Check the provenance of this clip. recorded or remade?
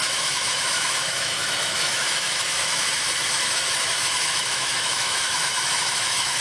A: remade